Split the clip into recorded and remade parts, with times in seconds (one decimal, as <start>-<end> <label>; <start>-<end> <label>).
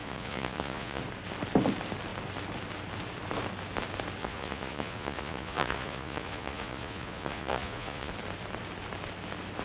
0.0-1.0 remade; 1.0-4.2 recorded; 4.2-8.1 remade; 8.1-9.6 recorded